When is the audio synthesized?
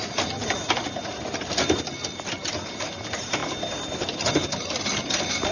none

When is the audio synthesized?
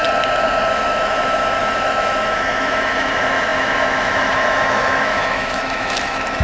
0.7-6.4 (autoencoder, DAC-VAE)